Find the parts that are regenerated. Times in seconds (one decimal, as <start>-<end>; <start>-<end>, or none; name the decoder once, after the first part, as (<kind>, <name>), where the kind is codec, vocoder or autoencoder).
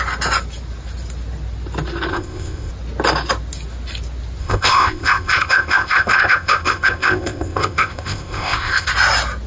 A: 2.1-2.7 (codec, ZipCodec); 4.4-8.9